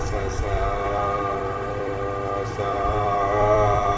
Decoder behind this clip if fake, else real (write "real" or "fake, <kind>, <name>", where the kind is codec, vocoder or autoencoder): fake, vocoder, BigVGAN v2